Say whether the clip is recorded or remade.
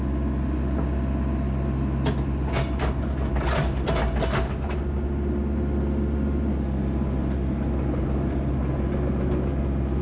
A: recorded